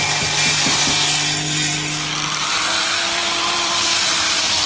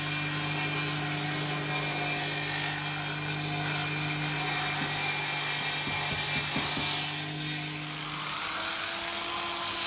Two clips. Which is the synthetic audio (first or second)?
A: first